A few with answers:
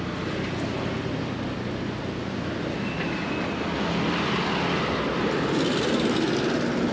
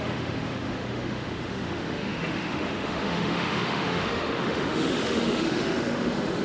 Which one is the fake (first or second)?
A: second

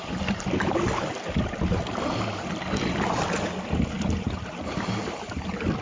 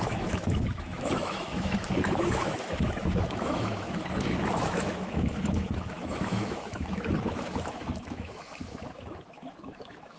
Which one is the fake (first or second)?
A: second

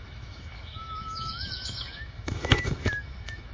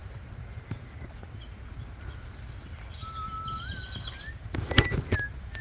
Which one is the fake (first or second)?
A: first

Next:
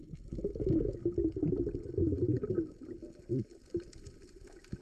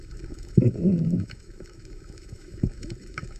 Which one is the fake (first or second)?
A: second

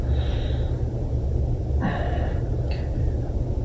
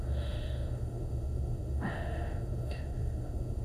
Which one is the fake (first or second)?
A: second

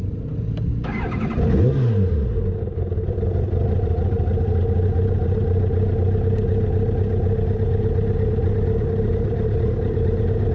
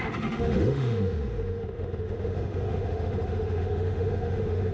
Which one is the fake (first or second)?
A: second